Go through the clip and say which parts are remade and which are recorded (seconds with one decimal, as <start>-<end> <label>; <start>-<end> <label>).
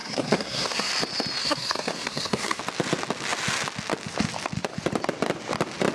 0.0-0.9 remade; 0.9-1.4 recorded; 1.4-2.6 remade; 2.6-5.9 recorded